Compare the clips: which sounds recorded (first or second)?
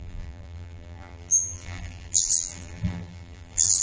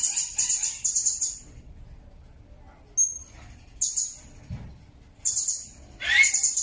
second